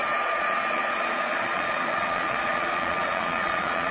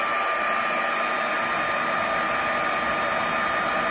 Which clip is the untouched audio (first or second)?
second